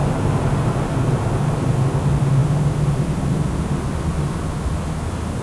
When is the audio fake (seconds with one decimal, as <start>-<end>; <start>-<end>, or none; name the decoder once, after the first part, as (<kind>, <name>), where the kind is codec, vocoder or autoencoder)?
0.0-0.7 (vocoder, BigVGAN v2)